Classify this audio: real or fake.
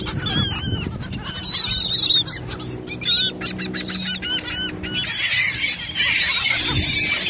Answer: real